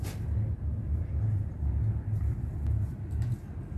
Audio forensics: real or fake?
real